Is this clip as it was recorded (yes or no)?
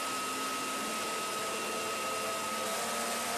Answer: yes